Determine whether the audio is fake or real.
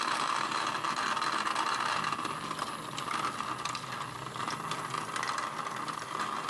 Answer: real